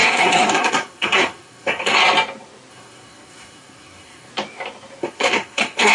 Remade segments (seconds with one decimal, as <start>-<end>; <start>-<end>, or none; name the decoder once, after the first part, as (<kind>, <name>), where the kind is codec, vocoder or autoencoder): 0.0-2.0 (codec, SNAC); 2.7-4.3; 5.0-5.9